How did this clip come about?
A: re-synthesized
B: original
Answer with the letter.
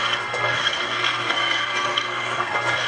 A